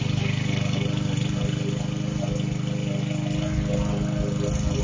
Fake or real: real